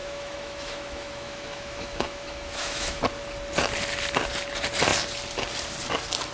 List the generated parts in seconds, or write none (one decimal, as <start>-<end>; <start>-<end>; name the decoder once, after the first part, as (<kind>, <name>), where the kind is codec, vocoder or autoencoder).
0.0-3.0 (autoencoder, DAC-VAE)